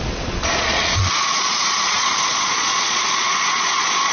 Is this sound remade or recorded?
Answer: remade